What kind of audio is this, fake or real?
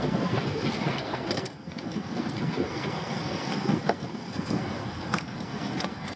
fake